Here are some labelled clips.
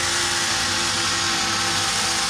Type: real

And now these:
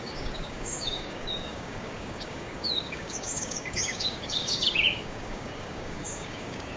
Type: fake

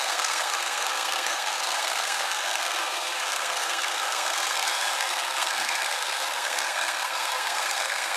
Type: fake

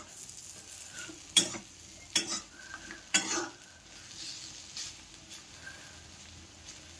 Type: real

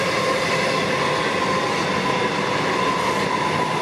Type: real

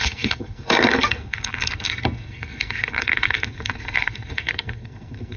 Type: fake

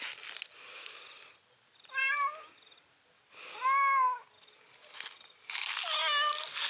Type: real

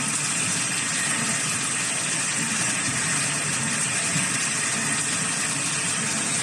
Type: real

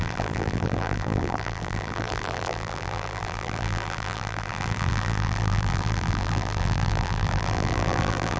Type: fake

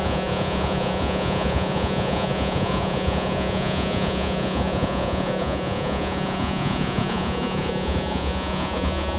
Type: fake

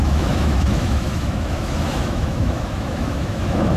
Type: fake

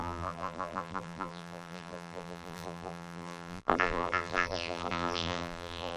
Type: fake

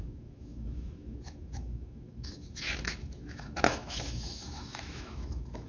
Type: fake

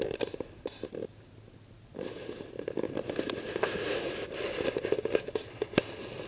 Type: real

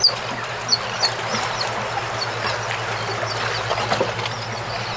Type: real